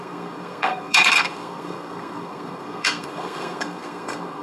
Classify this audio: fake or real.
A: fake